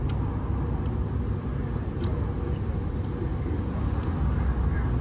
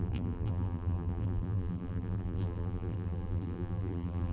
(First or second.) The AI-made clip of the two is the second